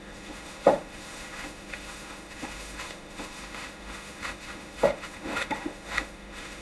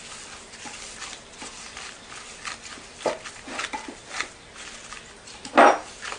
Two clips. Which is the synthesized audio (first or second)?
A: first